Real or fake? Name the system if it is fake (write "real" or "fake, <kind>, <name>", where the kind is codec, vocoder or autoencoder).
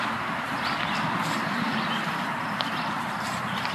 fake, vocoder, BigVGAN v2